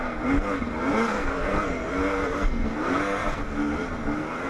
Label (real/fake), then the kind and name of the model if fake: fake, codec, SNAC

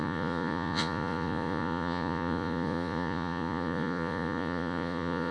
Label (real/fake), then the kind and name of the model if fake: fake, vocoder, Vocos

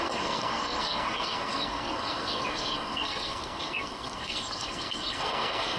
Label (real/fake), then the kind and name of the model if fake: fake, codec, SNAC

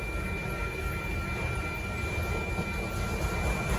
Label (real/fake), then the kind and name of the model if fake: real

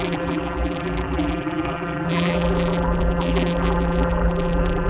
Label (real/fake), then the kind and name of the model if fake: fake, vocoder, BigVGAN v2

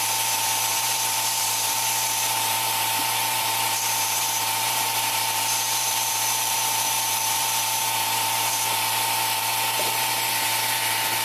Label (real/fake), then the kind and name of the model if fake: fake, vocoder, BigVGAN v2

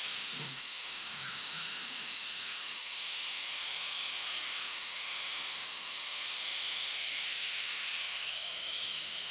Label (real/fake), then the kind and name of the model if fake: fake, autoencoder, DAC-VAE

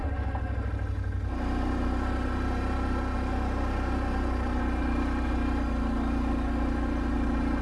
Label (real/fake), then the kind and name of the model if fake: real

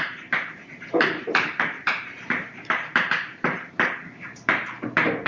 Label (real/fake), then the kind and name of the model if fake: fake, vocoder, BigVGAN v2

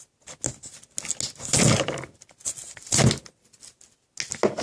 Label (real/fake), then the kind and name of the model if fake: real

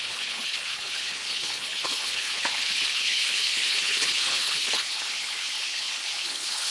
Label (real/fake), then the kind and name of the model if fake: fake, codec, HILCodec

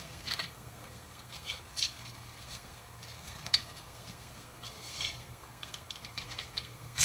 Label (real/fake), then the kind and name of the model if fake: fake, codec, SNAC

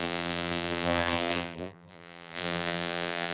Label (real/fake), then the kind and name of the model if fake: fake, vocoder, BigVGAN v2